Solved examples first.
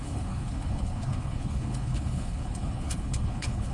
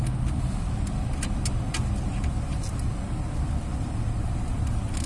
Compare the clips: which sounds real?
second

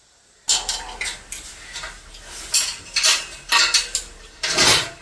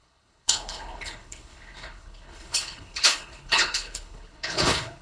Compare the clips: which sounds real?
first